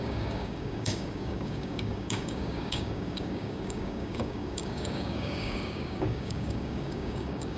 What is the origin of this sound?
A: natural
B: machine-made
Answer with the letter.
B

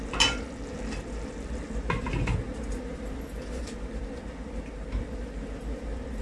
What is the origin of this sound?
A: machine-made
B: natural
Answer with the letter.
B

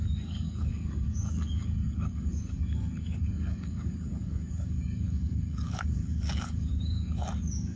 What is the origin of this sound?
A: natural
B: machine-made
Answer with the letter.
B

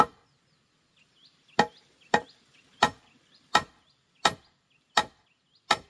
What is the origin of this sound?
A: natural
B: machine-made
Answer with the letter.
A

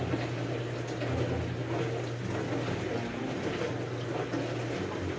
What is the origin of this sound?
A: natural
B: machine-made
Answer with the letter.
A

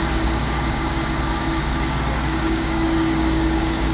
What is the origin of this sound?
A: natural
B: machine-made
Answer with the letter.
B